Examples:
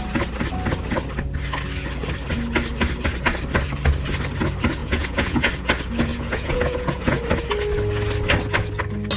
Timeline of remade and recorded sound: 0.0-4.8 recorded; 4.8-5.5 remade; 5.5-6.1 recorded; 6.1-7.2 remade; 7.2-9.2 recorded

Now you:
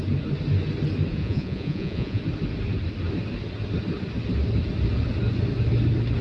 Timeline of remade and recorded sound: 0.0-1.2 recorded; 1.2-2.2 remade; 2.2-6.2 recorded